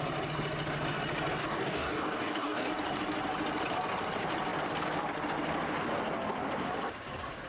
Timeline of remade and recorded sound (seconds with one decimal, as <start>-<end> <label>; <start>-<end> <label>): 0.0-1.4 recorded; 1.4-2.7 remade; 2.7-7.5 recorded